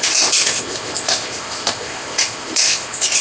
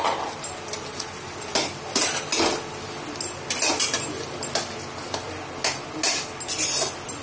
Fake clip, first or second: first